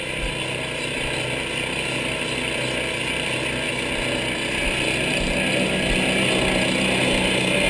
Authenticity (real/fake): real